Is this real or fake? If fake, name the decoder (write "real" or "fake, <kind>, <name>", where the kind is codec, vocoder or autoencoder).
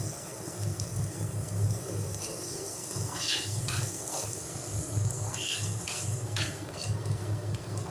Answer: fake, codec, SNAC